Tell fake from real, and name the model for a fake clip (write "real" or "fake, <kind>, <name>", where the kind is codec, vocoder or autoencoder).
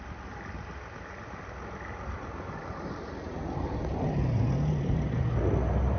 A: real